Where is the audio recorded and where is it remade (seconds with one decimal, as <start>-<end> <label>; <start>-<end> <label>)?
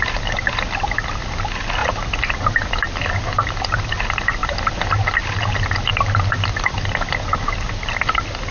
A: 0.0-1.8 recorded; 1.8-4.0 remade; 4.0-8.5 recorded